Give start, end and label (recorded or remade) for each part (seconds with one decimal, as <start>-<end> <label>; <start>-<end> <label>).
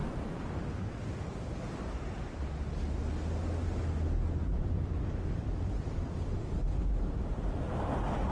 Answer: 0.0-2.5 remade; 2.5-4.5 recorded; 4.5-8.3 remade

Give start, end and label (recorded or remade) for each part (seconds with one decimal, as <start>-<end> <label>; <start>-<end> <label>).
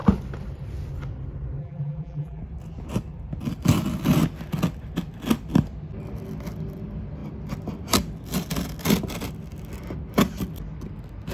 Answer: 0.0-1.6 recorded; 1.6-2.4 remade; 2.4-11.3 recorded